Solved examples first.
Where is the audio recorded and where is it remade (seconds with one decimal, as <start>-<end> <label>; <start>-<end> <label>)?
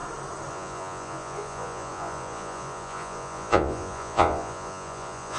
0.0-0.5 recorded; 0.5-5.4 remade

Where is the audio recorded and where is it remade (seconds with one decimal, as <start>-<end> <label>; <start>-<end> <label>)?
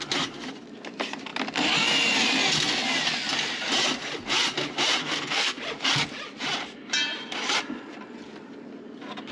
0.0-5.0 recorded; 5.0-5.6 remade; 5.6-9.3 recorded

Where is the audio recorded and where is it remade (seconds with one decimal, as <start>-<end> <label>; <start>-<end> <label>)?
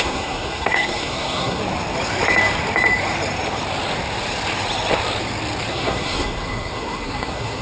0.0-1.6 remade; 1.6-5.7 recorded; 5.7-7.6 remade